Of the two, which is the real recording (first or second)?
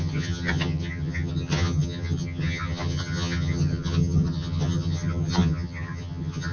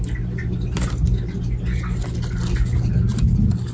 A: second